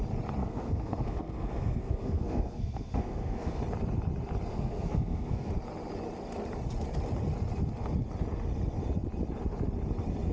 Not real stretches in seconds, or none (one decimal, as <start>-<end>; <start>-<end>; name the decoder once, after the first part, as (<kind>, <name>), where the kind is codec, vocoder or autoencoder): 0.4-3.6 (codec, SNAC); 4.5-5.5